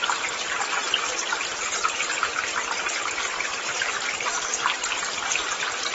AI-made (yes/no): no